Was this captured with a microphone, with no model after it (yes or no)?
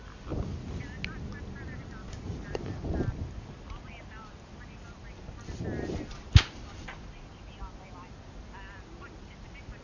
yes